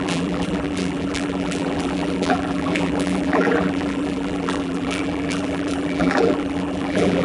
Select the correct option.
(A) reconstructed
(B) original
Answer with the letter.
A